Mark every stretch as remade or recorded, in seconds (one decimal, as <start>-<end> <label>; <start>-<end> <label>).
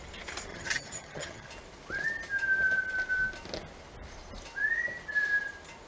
0.0-0.5 recorded; 0.5-1.5 remade; 1.5-5.9 recorded